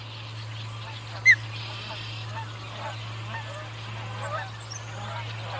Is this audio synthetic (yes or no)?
no